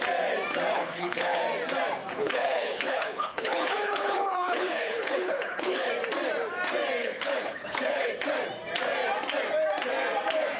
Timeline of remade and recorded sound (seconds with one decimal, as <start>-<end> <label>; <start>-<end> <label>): 0.0-0.7 recorded; 0.7-1.4 remade; 1.4-2.1 recorded; 2.1-5.9 remade; 5.9-7.0 recorded; 7.0-8.1 remade; 8.1-10.6 recorded